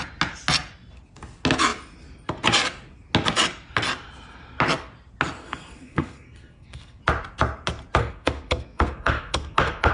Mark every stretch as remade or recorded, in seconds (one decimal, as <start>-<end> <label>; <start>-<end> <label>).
0.0-5.4 recorded; 5.4-7.0 remade; 7.0-8.0 recorded; 8.0-9.9 remade